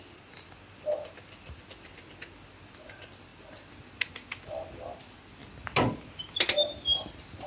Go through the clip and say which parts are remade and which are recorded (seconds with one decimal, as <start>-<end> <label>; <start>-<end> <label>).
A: 0.0-7.5 recorded